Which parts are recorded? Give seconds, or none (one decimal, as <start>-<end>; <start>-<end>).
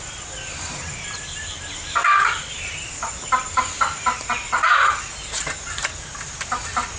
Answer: 0.0-7.0